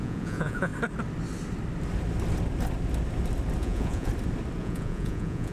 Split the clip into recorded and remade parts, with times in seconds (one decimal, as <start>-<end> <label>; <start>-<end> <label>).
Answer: 0.0-0.7 remade; 0.7-3.6 recorded; 3.6-4.1 remade; 4.1-4.6 recorded; 4.6-5.5 remade

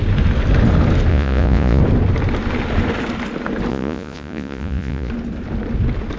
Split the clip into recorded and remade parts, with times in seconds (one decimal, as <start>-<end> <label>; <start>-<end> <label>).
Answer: 0.0-1.1 recorded; 1.1-1.8 remade; 1.8-3.7 recorded; 3.7-5.1 remade; 5.1-6.2 recorded

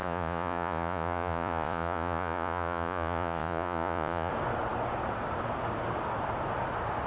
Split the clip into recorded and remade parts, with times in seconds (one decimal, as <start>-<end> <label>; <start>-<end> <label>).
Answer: 0.0-4.3 remade; 4.3-7.1 recorded

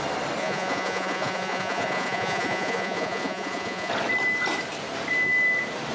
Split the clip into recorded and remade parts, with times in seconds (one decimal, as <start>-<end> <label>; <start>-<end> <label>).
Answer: 0.0-0.4 recorded; 0.4-3.9 remade; 3.9-5.9 recorded

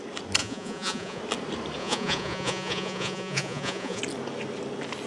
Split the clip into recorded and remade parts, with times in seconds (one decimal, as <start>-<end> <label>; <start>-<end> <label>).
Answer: 0.0-0.4 recorded; 0.4-1.2 remade; 1.2-1.8 recorded; 1.8-4.0 remade; 4.0-5.1 recorded

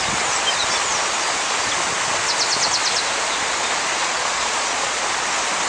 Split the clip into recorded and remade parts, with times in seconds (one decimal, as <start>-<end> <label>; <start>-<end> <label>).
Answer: 0.0-4.0 recorded; 4.0-5.0 remade; 5.0-5.7 recorded

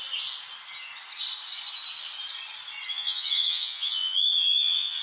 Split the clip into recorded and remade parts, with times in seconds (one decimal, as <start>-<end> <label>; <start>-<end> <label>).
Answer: 0.0-2.9 recorded; 2.9-5.0 remade